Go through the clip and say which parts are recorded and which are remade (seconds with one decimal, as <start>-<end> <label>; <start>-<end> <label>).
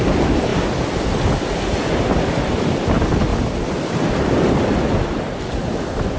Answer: 0.0-0.5 remade; 0.5-2.1 recorded; 2.1-3.3 remade; 3.3-4.5 recorded; 4.5-6.2 remade